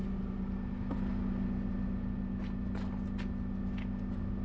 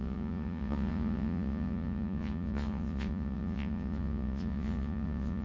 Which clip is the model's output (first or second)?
second